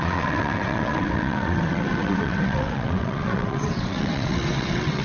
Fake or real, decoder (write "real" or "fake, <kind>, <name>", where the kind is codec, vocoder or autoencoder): fake, vocoder, WaveNeXt